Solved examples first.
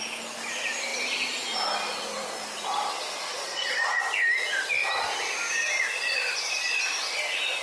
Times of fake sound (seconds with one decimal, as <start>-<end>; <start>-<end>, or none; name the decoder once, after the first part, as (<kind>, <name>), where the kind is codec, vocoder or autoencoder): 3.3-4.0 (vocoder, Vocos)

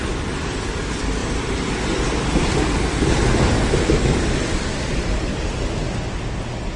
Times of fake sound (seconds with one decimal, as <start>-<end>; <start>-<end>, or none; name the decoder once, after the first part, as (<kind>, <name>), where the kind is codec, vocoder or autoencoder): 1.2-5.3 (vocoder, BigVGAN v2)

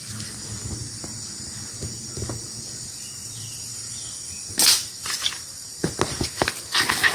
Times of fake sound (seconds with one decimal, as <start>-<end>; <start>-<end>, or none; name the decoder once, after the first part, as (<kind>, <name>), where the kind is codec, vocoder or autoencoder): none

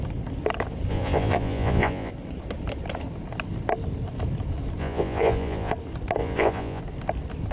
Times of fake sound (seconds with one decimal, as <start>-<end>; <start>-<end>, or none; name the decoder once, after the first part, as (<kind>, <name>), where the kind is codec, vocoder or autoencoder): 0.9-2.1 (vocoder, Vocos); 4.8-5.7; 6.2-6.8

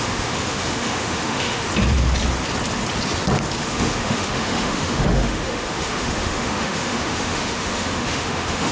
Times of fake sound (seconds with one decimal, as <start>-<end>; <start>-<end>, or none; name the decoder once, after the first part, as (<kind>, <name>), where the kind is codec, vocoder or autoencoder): 0.0-1.7 (autoencoder, DAC-VAE); 3.6-8.7